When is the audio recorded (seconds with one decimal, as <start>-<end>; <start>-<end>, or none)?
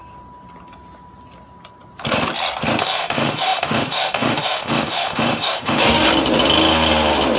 0.0-2.8; 6.1-7.4